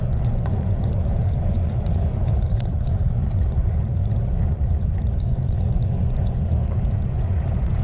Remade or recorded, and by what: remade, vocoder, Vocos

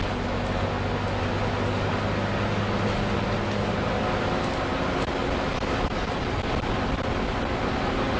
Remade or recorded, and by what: recorded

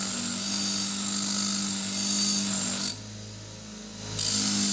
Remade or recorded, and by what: recorded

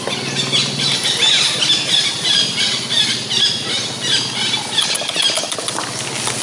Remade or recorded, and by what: recorded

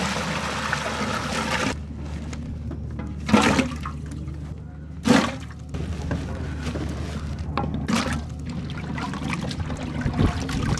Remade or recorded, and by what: recorded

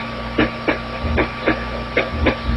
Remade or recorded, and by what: recorded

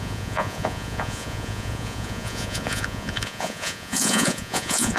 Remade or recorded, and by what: remade, vocoder, Vocos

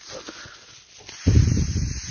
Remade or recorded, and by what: recorded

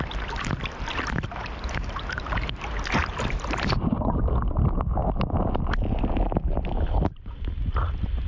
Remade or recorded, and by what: recorded